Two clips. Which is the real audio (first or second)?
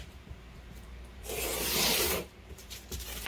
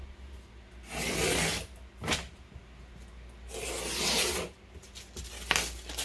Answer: second